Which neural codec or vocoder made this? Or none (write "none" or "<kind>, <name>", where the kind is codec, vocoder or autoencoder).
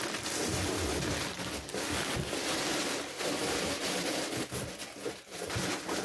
none